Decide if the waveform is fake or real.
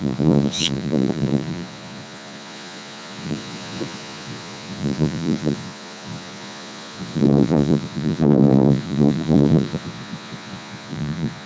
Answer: fake